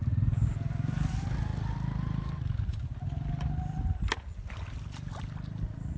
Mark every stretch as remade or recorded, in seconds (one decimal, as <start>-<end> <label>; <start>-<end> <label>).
0.0-6.0 recorded